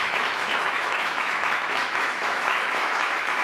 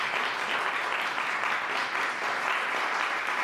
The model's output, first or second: first